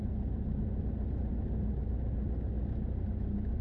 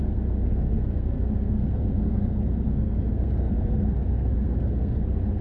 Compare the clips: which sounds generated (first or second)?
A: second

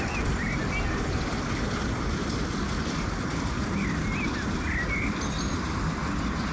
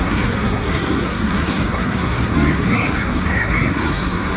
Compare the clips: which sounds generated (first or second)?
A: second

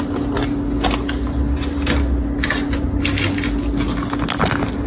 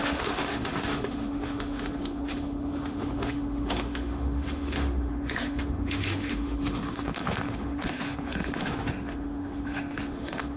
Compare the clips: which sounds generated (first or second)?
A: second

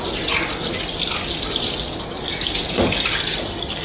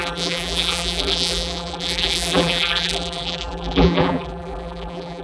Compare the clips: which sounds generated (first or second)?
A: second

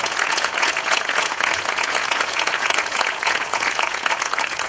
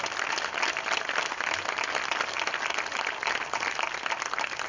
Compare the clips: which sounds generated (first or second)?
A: first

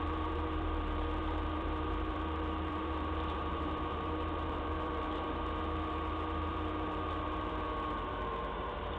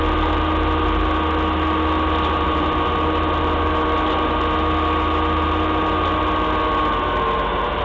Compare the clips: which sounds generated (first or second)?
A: first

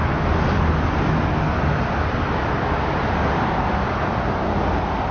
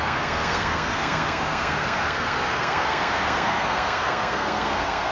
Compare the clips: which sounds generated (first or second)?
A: second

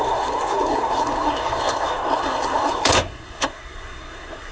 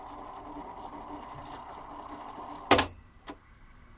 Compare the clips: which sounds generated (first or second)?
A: first